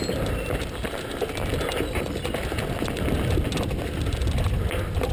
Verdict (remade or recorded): recorded